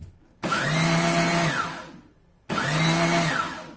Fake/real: real